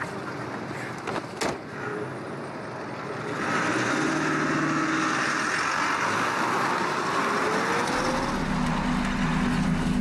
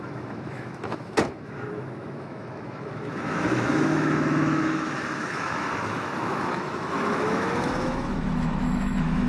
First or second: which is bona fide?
first